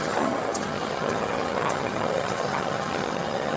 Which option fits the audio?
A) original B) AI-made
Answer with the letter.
B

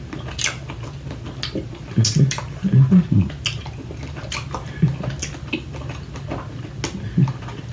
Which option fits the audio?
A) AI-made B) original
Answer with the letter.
B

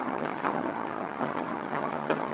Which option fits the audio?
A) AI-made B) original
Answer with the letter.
A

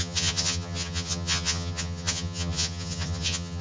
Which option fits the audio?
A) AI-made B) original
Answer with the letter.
A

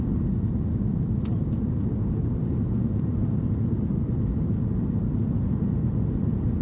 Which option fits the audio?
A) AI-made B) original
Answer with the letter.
B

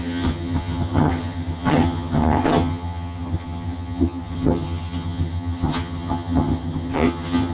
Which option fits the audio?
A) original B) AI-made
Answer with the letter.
B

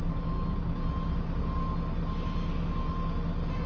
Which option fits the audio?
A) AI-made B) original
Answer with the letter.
B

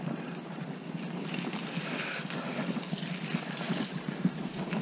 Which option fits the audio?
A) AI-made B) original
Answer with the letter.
B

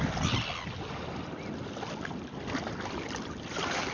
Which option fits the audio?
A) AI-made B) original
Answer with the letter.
B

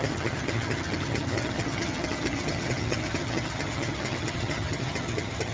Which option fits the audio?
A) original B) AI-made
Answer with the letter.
B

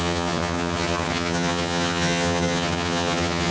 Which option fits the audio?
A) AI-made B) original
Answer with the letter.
A